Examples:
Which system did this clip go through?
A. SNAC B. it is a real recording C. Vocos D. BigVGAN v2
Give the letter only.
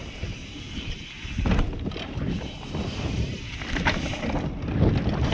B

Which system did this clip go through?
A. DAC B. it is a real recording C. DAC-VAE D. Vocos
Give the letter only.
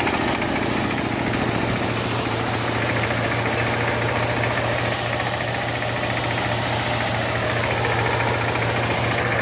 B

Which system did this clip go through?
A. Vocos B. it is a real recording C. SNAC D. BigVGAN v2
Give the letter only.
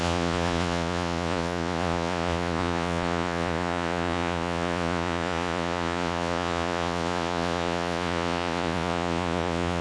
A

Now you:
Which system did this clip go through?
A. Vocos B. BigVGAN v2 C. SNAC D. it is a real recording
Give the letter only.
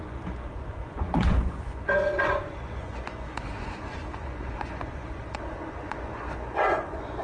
A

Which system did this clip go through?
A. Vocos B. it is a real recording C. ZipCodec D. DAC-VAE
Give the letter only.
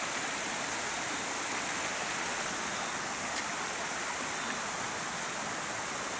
B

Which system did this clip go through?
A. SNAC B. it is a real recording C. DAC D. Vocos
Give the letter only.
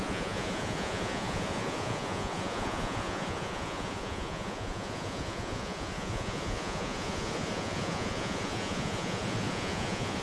D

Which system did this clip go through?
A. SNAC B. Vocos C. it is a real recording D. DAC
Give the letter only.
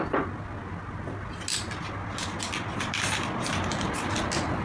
C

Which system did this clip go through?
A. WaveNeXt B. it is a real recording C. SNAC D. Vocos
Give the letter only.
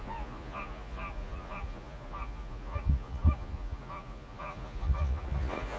D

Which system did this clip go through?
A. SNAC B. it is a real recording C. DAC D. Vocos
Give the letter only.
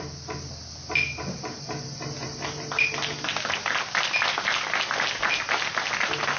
B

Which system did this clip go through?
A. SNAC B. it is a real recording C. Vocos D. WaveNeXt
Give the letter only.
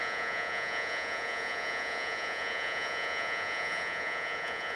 C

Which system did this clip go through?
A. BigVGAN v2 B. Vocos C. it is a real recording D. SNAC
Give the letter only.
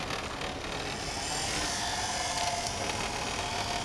C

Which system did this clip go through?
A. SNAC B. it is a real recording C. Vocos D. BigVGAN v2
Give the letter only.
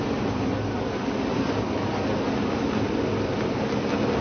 B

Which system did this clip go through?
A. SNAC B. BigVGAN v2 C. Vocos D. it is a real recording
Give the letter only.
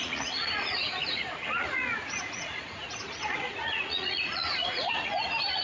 C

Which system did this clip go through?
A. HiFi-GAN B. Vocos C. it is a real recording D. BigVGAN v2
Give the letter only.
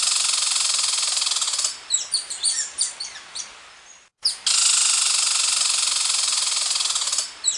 C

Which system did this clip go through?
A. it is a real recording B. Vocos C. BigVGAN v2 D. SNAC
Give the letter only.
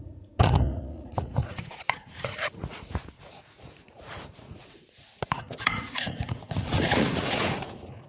B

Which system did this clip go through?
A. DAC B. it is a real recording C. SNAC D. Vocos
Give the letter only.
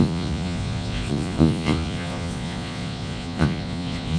D